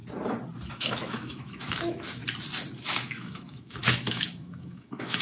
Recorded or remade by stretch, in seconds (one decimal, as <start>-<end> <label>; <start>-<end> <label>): 0.0-0.7 recorded; 0.7-2.2 remade; 2.2-2.8 recorded; 2.8-5.2 remade